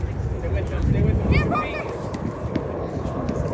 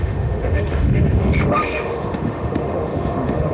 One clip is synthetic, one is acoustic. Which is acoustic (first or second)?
first